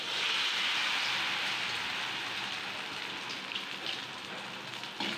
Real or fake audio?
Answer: real